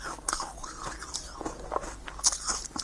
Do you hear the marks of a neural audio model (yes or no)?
no